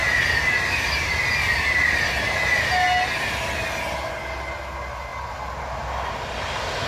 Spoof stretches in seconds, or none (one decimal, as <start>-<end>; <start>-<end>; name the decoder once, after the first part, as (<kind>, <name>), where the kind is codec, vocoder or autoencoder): none